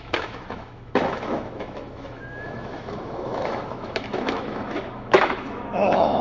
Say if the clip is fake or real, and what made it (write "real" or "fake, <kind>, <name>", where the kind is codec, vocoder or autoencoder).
fake, autoencoder, DAC-VAE